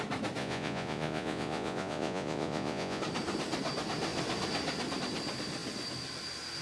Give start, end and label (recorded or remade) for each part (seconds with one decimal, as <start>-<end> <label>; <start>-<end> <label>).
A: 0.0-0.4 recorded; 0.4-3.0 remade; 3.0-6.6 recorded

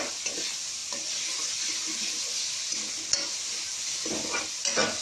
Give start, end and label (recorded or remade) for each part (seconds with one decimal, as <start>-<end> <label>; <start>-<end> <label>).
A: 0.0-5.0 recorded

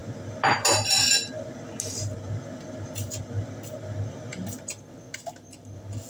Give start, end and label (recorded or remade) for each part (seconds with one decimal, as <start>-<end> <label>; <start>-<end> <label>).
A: 0.0-6.1 recorded

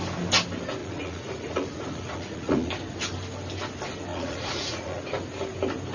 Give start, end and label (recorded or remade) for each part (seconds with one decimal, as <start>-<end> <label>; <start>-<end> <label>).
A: 0.0-0.8 recorded; 0.8-2.7 remade; 2.7-4.1 recorded; 4.1-5.0 remade; 5.0-5.9 recorded

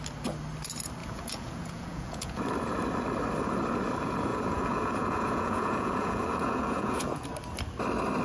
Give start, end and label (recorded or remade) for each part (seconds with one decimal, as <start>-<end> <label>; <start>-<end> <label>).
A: 0.0-1.0 recorded; 1.0-2.4 remade; 2.4-4.3 recorded; 4.3-7.3 remade; 7.3-8.2 recorded

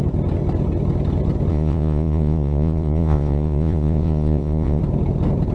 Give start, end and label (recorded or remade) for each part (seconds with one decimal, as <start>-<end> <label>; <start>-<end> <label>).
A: 0.0-1.5 recorded; 1.5-4.8 remade; 4.8-5.5 recorded

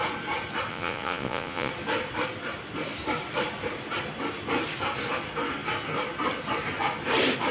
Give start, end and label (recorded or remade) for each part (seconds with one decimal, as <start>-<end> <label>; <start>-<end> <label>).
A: 0.0-0.7 recorded; 0.7-1.7 remade; 1.7-7.5 recorded